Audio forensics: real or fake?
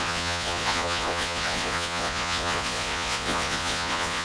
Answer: fake